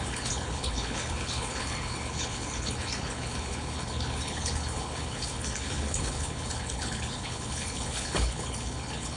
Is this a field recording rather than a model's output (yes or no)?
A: no